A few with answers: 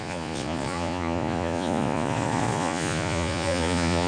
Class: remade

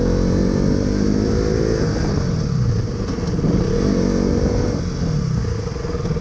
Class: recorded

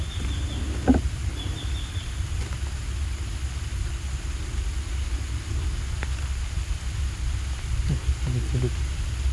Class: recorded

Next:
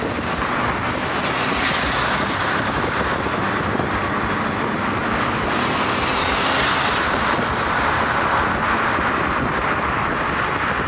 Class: recorded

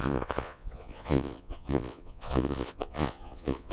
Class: remade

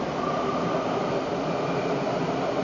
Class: recorded